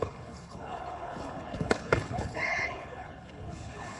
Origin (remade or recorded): remade